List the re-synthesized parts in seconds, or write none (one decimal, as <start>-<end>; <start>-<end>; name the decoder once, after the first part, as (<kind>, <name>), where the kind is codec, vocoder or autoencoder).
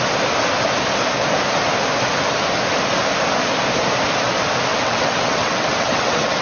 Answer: 4.7-6.4 (vocoder, WaveNeXt)